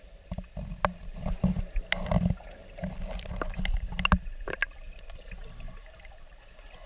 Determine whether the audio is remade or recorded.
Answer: recorded